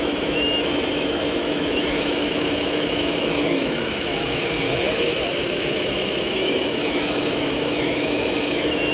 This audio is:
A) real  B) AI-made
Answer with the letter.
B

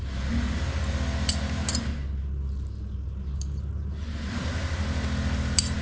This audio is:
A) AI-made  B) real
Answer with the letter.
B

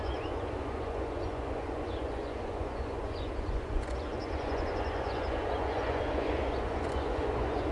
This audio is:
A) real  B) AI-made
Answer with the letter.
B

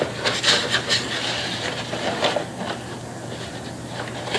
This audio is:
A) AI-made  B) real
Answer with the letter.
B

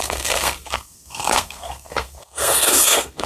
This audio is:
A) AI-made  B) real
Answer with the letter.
A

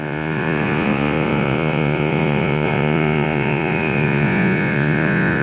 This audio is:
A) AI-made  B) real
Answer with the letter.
A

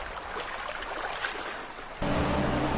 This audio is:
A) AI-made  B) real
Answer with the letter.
B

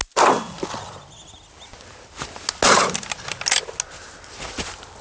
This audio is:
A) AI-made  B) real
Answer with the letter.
B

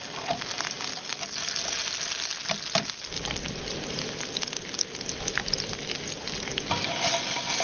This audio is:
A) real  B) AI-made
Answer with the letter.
A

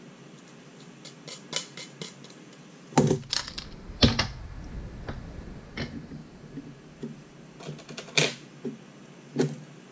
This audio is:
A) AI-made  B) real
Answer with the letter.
B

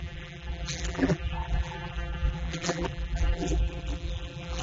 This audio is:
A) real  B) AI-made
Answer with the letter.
B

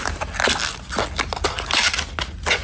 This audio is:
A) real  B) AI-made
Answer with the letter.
A